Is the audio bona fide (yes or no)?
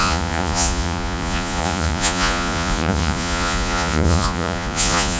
no